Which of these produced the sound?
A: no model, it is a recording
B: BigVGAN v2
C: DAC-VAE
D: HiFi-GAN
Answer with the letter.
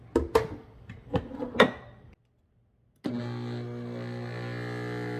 A